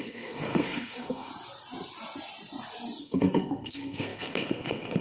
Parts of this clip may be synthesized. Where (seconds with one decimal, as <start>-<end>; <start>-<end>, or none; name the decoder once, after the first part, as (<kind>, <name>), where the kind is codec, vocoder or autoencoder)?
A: 0.0-1.3 (codec, SNAC); 3.0-5.0